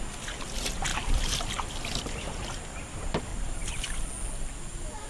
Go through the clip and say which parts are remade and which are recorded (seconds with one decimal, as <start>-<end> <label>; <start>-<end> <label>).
0.0-0.9 recorded; 0.9-1.5 remade; 1.5-3.3 recorded; 3.3-4.1 remade; 4.1-5.1 recorded

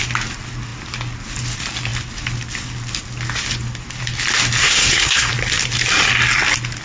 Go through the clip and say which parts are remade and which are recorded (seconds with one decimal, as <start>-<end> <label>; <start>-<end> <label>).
0.0-4.6 recorded; 4.6-5.3 remade; 5.3-6.8 recorded

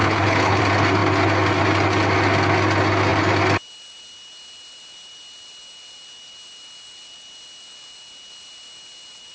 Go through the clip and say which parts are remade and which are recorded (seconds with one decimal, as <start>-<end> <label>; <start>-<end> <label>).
0.0-0.6 remade; 0.6-9.3 recorded

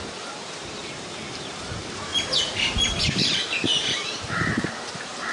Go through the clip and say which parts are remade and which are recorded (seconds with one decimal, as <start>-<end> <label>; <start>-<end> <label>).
0.0-0.8 remade; 0.8-1.3 recorded; 1.3-2.1 remade; 2.1-3.0 recorded; 3.0-5.3 remade

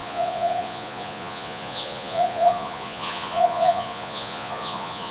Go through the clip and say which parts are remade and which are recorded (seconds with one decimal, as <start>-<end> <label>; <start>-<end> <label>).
0.0-5.1 remade

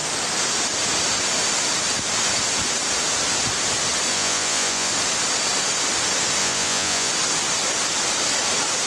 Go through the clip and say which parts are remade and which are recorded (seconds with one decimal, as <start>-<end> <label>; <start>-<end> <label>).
0.0-4.1 recorded; 4.1-4.9 remade; 4.9-6.4 recorded; 6.4-7.1 remade; 7.1-8.9 recorded

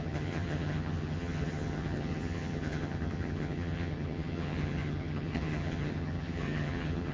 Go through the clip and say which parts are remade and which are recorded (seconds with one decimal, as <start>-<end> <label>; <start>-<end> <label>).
0.0-7.1 remade